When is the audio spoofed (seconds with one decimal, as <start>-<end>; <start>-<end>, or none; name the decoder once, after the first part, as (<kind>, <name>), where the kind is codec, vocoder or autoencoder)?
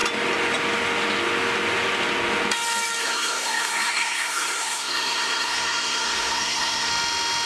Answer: 3.0-6.9 (codec, SNAC)